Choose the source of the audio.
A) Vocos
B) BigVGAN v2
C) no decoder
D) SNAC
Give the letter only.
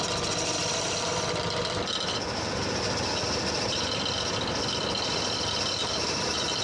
C